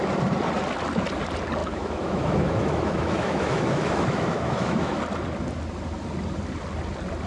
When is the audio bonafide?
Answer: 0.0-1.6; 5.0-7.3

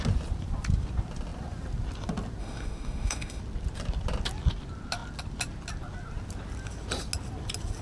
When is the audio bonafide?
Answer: 0.0-2.4; 3.4-7.8

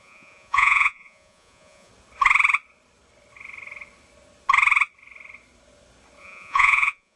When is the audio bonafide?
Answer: 1.9-6.2

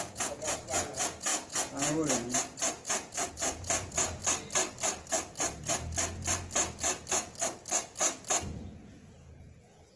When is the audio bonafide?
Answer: 4.2-8.5

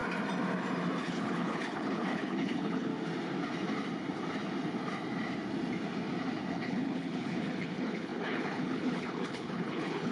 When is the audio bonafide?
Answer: 0.0-1.0; 2.9-6.5

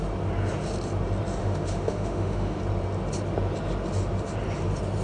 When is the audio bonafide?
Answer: 0.0-1.4; 2.6-5.0

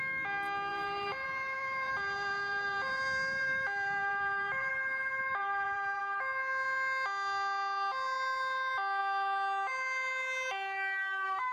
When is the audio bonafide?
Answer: 0.0-0.7; 4.7-5.4; 6.0-11.5